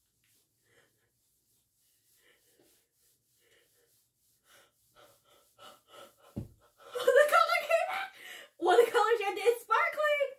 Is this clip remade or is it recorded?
recorded